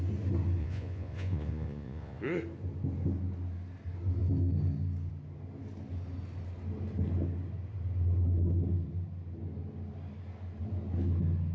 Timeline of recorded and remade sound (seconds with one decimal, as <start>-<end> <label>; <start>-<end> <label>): 0.0-0.6 recorded; 0.6-2.2 remade; 2.2-11.5 recorded